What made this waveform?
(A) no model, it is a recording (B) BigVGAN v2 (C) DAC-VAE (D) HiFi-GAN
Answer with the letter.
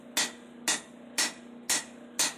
A